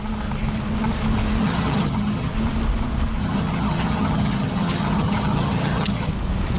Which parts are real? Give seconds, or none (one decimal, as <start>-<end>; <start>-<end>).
0.0-1.4; 2.3-3.2; 6.1-6.6